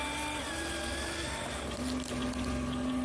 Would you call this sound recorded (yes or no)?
yes